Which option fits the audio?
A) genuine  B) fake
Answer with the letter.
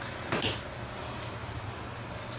A